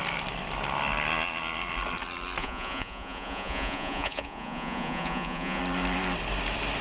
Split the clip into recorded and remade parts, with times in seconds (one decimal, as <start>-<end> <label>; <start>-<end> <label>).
0.0-2.4 recorded; 2.4-5.6 remade; 5.6-6.8 recorded